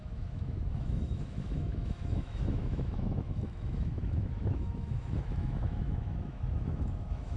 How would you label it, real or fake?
fake